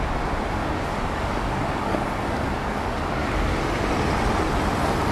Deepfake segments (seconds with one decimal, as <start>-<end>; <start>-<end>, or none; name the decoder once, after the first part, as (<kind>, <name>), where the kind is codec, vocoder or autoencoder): 0.6-3.6 (codec, DAC)